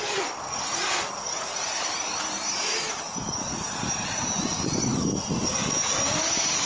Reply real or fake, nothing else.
real